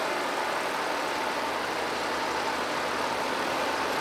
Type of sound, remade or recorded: recorded